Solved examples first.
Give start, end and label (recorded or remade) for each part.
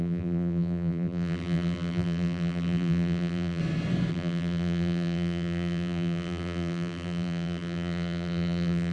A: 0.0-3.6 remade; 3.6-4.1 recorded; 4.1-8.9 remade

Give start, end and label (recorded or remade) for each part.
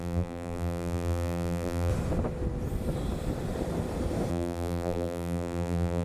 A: 0.0-1.9 remade; 1.9-4.3 recorded; 4.3-6.0 remade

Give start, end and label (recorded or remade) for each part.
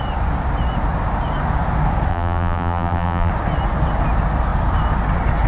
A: 0.0-2.1 recorded; 2.1-3.3 remade; 3.3-5.5 recorded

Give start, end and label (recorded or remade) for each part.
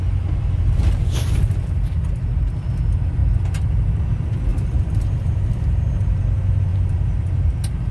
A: 0.0-4.5 recorded; 4.5-5.9 remade; 5.9-7.9 recorded